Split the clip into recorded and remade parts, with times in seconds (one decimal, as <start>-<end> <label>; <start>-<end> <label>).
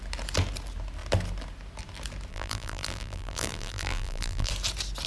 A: 0.0-2.3 recorded; 2.3-4.5 remade; 4.5-5.1 recorded